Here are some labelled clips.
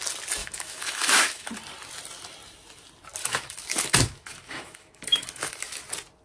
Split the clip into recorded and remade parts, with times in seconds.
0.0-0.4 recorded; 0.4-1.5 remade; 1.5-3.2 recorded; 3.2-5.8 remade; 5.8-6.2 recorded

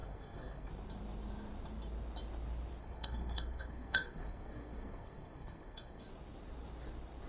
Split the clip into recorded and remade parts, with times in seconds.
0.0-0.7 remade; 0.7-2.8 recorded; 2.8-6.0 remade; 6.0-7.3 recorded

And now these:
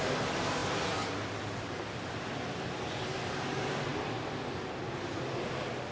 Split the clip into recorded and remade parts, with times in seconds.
0.0-5.9 recorded

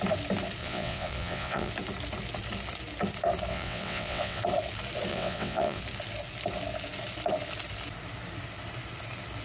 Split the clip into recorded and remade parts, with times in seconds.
0.0-0.6 recorded; 0.6-1.7 remade; 1.7-3.5 recorded; 3.5-4.4 remade; 4.4-5.1 recorded; 5.1-5.8 remade; 5.8-9.4 recorded

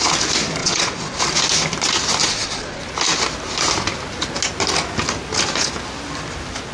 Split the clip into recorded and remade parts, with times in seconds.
0.0-0.6 recorded; 0.6-1.2 remade; 1.2-2.2 recorded; 2.2-2.8 remade; 2.8-6.7 recorded

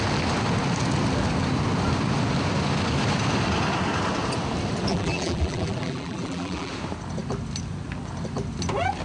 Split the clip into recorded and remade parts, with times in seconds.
0.0-4.9 recorded; 4.9-6.7 remade; 6.7-9.0 recorded

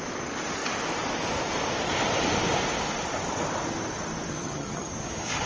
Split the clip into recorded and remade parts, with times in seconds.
0.0-4.3 recorded; 4.3-4.9 remade; 4.9-5.5 recorded

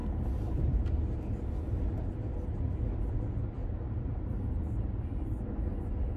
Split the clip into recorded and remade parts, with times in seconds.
0.0-0.8 remade; 0.8-3.6 recorded; 3.6-4.5 remade; 4.5-6.2 recorded